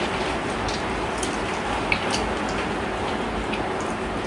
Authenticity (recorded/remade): recorded